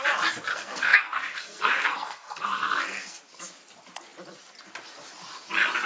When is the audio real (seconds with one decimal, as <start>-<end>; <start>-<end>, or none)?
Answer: 0.0-0.5; 3.2-5.9